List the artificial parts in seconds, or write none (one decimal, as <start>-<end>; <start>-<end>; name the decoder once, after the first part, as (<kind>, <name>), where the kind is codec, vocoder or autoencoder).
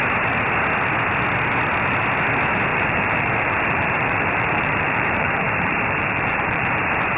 2.7-6.7 (vocoder, BigVGAN v2)